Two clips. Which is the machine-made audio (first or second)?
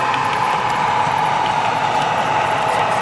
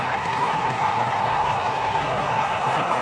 second